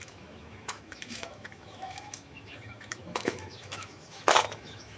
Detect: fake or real fake